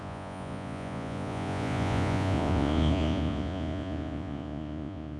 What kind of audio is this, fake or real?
fake